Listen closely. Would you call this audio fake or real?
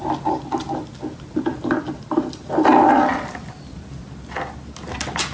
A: real